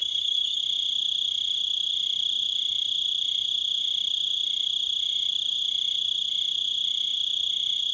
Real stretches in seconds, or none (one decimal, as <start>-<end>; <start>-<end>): 0.6-7.9